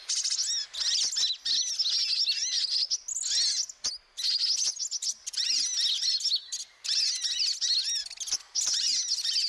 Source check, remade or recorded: recorded